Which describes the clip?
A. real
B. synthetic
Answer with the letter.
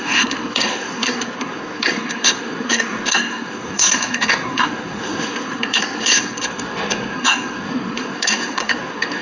B